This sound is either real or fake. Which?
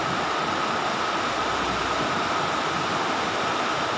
real